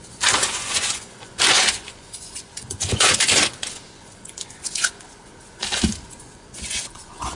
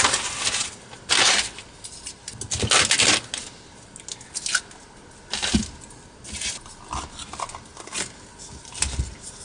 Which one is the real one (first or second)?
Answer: second